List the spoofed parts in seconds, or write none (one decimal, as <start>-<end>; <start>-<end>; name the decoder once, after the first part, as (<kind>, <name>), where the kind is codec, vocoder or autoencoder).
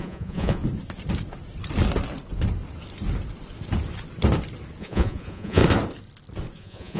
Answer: 0.0-0.6 (vocoder, Vocos); 4.8-5.6; 6.5-7.0